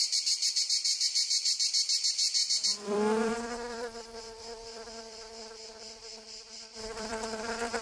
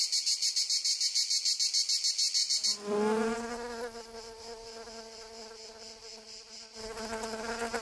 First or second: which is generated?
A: first